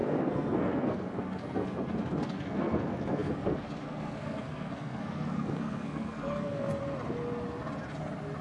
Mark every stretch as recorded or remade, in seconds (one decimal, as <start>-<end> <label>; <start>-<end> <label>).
0.0-6.8 remade; 6.8-8.4 recorded

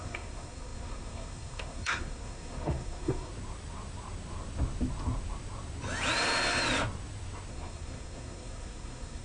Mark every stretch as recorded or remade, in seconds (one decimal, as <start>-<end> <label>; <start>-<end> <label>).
0.0-3.3 remade; 3.3-7.5 recorded; 7.5-9.2 remade

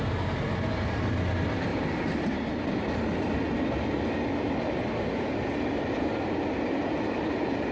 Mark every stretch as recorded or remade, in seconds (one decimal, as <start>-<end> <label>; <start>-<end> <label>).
0.0-7.7 recorded

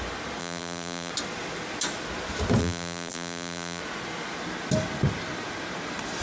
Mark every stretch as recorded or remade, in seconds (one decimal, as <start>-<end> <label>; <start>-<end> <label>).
0.0-0.4 recorded; 0.4-1.1 remade; 1.1-2.6 recorded; 2.6-3.8 remade; 3.8-6.2 recorded

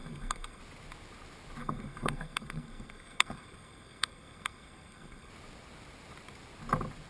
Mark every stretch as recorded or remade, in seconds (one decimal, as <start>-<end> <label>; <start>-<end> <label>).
0.0-0.6 remade; 0.6-1.6 recorded; 1.6-5.3 remade; 5.3-7.1 recorded

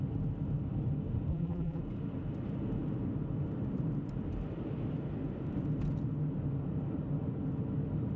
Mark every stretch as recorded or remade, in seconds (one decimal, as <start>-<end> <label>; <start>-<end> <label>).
0.0-1.3 recorded; 1.3-1.8 remade; 1.8-8.2 recorded

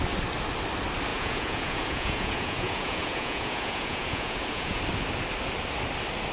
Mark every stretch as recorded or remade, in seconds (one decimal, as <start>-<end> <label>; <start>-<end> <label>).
0.0-1.1 recorded; 1.1-4.8 remade; 4.8-6.3 recorded

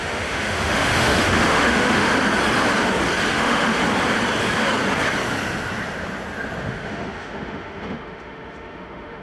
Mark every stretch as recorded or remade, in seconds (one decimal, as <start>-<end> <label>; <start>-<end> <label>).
0.0-2.1 remade; 2.1-3.3 recorded; 3.3-3.8 remade; 3.8-6.6 recorded; 6.6-9.2 remade